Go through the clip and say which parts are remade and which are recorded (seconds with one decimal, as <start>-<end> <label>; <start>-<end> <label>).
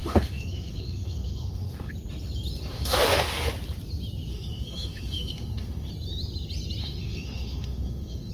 0.0-1.9 remade; 1.9-2.7 recorded; 2.7-3.5 remade; 3.5-4.3 recorded; 4.3-5.9 remade; 5.9-6.8 recorded; 6.8-8.3 remade